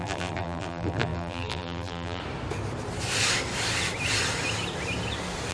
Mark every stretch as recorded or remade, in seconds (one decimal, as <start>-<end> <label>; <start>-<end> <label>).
0.0-2.2 remade; 2.2-5.5 recorded